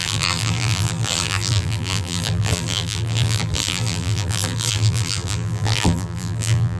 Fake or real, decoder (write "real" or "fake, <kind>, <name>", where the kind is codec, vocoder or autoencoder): fake, vocoder, BigVGAN v2